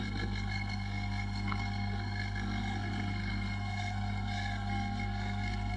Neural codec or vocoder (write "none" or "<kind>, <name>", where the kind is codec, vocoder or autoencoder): codec, SNAC